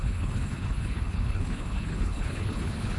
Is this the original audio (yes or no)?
no